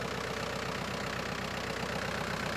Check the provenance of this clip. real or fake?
real